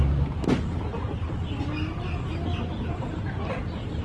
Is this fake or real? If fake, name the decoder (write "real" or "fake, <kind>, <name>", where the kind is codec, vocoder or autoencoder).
real